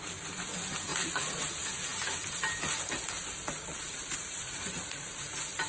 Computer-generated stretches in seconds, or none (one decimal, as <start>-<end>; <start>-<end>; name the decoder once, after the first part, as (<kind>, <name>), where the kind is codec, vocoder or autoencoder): 0.9-1.5 (vocoder, Vocos); 3.7-5.3